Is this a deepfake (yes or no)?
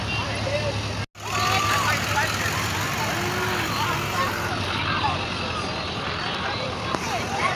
no